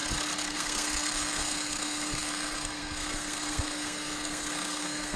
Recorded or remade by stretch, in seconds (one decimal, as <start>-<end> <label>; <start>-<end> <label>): 0.0-0.5 recorded; 0.5-5.2 remade